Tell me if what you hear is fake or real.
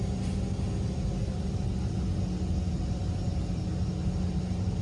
real